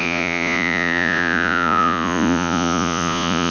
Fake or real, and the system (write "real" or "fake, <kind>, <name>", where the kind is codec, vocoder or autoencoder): fake, vocoder, Vocos